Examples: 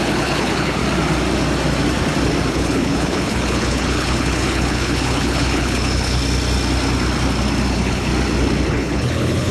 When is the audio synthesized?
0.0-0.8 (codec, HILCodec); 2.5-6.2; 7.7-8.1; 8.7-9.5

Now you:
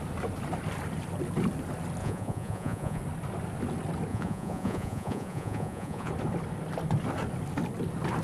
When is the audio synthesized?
2.0-3.0 (vocoder, Vocos); 4.1-6.1

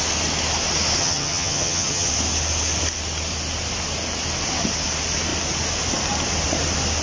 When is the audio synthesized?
1.0-2.1 (vocoder, HiFi-GAN)

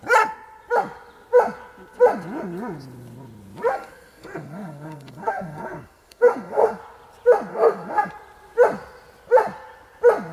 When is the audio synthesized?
3.7-6.8 (codec, SNAC); 7.5-8.1

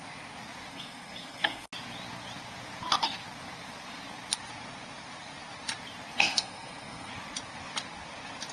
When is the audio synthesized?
0.7-1.7 (codec, SNAC); 6.1-7.1

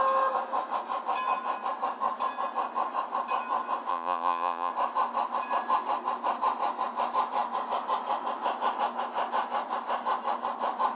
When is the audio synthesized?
3.9-4.7 (vocoder, BigVGAN v2)

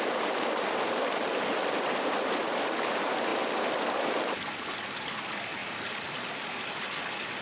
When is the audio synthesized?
none

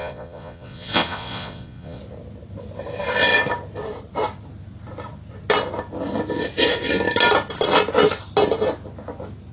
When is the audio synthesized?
0.0-2.0 (vocoder, Vocos)